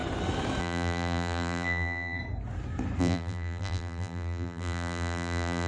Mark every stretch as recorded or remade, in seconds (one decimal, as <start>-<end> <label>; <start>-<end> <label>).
0.0-0.6 recorded; 0.6-2.2 remade; 2.2-3.0 recorded; 3.0-5.7 remade